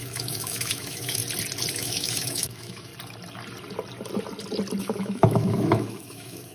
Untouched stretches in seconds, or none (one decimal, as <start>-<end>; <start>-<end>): 1.2-1.7; 2.9-4.8